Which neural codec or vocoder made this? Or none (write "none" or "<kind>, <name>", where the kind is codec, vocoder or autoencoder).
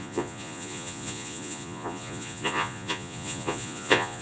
vocoder, Vocos